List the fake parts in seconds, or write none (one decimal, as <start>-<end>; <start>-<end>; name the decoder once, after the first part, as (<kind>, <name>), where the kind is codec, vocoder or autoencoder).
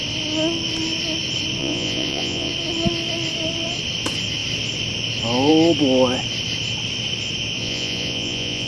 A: 1.6-2.5 (vocoder, Vocos); 7.6-8.7